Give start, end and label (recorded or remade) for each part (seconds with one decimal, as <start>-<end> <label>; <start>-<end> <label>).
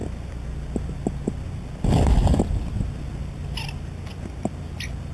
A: 0.0-5.1 recorded